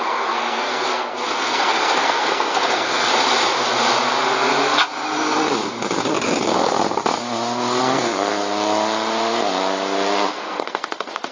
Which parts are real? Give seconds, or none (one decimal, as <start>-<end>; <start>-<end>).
3.1-7.8; 8.3-10.3